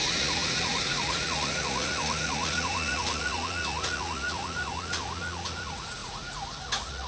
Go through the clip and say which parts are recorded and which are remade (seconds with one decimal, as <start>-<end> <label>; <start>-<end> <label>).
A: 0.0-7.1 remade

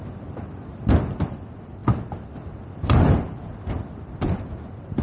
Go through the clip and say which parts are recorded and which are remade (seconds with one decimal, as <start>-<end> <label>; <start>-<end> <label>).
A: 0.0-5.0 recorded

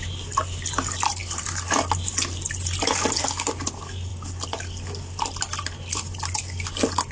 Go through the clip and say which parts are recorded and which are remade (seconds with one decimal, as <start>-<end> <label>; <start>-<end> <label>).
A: 0.0-7.1 recorded

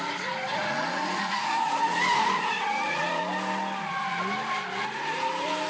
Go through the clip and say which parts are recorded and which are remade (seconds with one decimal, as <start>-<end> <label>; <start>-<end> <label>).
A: 0.0-0.5 recorded; 0.5-3.2 remade; 3.2-5.7 recorded

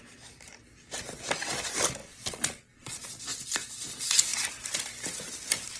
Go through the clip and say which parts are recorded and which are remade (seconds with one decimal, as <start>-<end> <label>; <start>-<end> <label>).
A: 0.0-2.0 recorded; 2.0-3.2 remade; 3.2-5.8 recorded

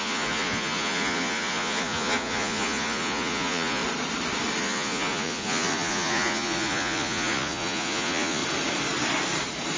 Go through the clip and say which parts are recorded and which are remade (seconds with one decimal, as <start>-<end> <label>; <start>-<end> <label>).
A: 0.0-3.8 remade; 3.8-4.6 recorded; 4.6-8.4 remade; 8.4-9.8 recorded